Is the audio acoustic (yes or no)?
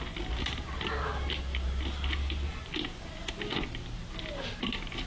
yes